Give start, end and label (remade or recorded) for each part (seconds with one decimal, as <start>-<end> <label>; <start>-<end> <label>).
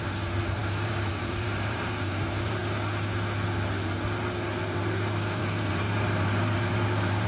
0.0-2.6 remade; 2.6-4.6 recorded; 4.6-7.3 remade